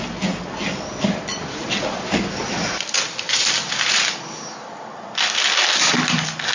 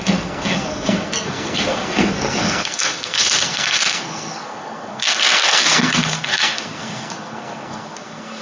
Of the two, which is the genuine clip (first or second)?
first